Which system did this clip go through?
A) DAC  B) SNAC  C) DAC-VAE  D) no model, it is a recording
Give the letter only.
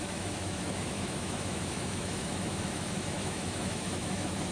C